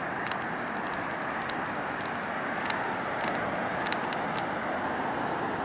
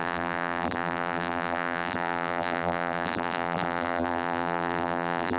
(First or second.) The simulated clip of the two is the second